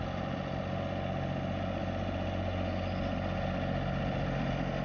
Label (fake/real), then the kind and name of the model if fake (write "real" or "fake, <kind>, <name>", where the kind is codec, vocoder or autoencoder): real